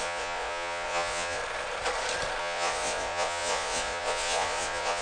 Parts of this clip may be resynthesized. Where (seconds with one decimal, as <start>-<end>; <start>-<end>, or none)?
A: 0.0-1.4; 2.4-5.0